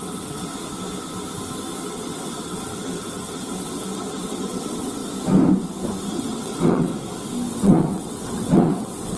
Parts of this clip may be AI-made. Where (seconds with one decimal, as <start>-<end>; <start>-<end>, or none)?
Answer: 0.0-0.5; 1.9-5.0; 6.1-6.9; 7.5-9.2